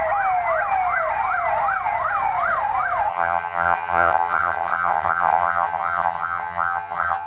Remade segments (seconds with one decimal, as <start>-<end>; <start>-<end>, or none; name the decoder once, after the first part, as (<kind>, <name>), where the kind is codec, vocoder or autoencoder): 3.1-7.3 (vocoder, HiFi-GAN)